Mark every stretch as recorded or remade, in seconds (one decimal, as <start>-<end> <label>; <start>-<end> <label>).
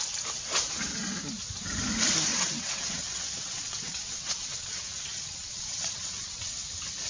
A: 0.0-2.3 recorded; 2.3-6.6 remade; 6.6-7.1 recorded